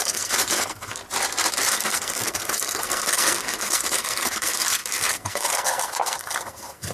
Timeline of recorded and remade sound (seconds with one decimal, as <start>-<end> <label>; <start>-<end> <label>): 0.0-1.0 remade; 1.0-1.7 recorded; 1.7-6.9 remade